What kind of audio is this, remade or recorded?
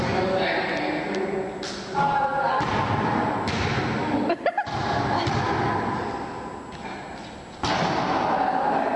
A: recorded